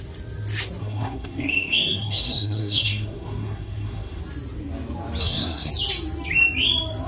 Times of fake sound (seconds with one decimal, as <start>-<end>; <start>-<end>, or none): 0.8-4.2; 5.2-5.7